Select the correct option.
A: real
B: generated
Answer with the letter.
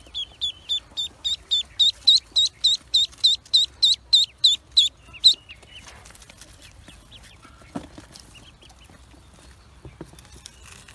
A